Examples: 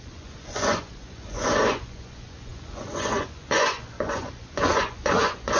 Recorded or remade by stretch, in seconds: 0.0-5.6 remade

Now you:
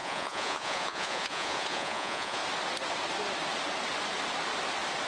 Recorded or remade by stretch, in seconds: 0.0-2.4 remade; 2.4-5.1 recorded

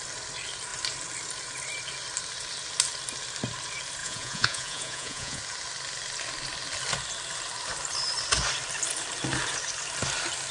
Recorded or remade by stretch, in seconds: 0.0-4.0 recorded; 4.0-5.4 remade; 5.4-10.5 recorded